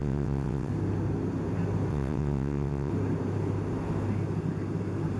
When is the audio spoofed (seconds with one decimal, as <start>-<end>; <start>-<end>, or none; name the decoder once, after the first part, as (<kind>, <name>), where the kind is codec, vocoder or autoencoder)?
0.0-0.7 (vocoder, WaveNeXt); 1.9-2.9